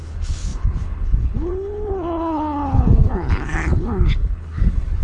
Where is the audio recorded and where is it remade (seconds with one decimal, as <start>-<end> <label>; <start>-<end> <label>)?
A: 0.0-5.0 remade